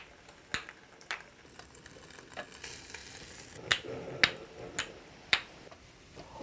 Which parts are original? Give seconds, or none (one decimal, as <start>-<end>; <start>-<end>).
0.0-6.4